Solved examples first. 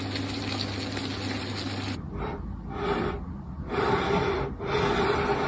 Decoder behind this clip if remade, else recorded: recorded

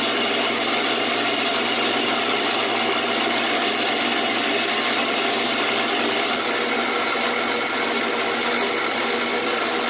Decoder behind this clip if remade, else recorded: recorded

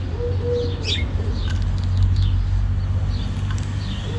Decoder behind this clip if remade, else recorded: recorded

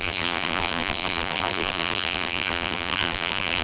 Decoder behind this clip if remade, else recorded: remade, vocoder, BigVGAN v2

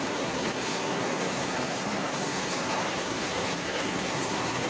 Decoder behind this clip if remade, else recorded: remade, codec, SNAC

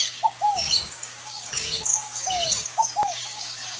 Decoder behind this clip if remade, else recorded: remade, codec, DAC